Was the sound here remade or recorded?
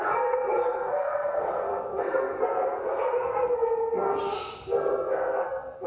remade